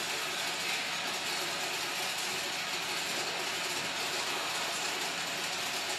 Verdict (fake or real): real